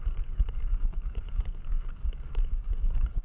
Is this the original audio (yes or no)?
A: no